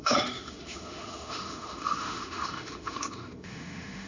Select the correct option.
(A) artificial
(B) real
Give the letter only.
A